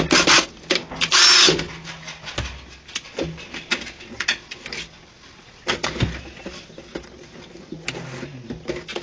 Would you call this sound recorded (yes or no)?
yes